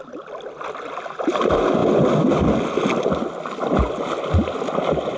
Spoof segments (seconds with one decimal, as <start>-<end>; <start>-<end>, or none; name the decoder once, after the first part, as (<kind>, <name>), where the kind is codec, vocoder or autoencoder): none